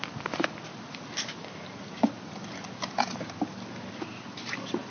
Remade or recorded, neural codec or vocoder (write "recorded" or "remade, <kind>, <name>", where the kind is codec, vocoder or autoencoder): recorded